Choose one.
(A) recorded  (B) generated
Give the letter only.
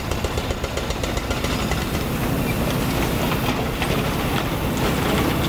A